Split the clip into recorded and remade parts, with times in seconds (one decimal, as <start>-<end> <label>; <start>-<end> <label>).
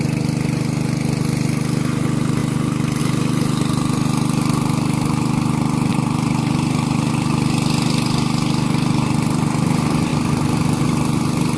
0.0-5.9 recorded; 5.9-7.1 remade; 7.1-11.6 recorded